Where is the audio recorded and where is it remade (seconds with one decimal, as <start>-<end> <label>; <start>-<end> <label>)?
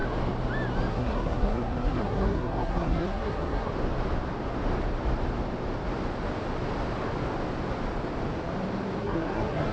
0.0-0.9 recorded; 0.9-3.7 remade; 3.7-9.0 recorded; 9.0-9.7 remade